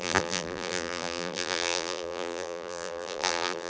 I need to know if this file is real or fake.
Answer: fake